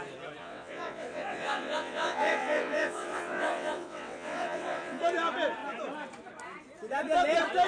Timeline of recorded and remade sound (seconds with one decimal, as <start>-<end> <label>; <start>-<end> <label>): 0.0-0.4 recorded; 0.4-5.0 remade; 5.0-7.7 recorded